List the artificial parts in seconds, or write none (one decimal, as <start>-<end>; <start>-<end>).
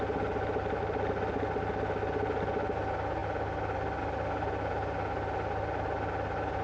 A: none